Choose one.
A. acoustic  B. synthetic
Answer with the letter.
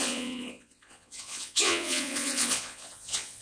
B